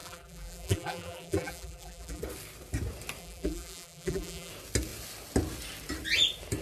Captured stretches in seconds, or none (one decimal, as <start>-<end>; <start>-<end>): 2.2-3.2; 4.5-6.6